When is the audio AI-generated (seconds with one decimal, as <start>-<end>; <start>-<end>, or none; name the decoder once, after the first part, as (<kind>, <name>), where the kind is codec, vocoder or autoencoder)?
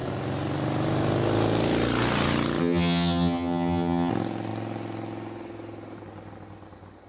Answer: 2.6-4.1 (vocoder, HiFi-GAN)